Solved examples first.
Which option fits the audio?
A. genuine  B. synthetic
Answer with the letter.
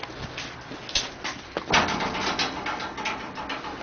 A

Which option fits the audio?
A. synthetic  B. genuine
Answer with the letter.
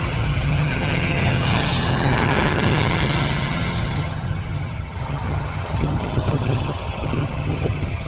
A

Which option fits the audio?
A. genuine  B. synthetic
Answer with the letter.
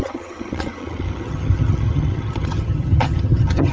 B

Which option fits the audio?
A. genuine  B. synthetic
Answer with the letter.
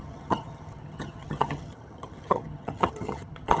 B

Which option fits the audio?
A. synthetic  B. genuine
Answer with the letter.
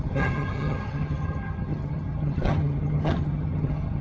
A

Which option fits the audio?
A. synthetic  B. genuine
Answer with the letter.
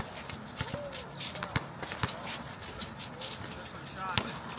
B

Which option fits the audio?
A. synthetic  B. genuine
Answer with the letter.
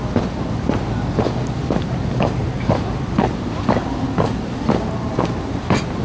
B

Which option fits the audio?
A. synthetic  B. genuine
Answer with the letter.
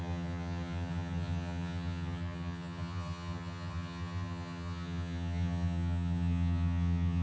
A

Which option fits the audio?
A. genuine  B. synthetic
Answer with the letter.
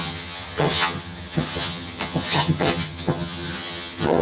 B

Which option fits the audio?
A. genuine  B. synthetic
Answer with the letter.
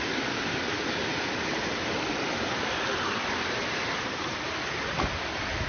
A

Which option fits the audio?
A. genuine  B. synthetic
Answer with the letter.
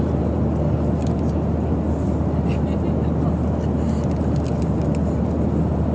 A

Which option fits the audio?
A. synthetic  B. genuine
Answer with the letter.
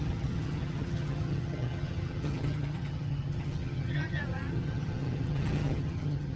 A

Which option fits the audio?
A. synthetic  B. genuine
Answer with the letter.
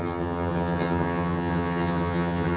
A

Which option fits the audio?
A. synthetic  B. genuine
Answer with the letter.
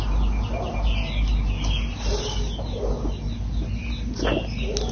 B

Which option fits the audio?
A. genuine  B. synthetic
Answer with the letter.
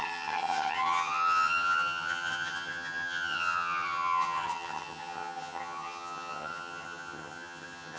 B